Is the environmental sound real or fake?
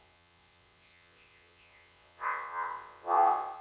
fake